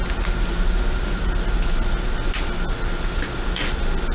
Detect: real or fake real